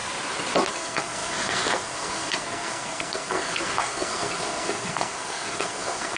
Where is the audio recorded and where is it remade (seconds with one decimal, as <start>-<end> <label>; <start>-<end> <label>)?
0.0-0.7 recorded; 0.7-6.2 remade